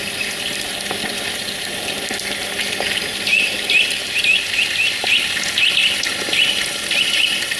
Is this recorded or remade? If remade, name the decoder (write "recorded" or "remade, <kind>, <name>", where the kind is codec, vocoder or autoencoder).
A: recorded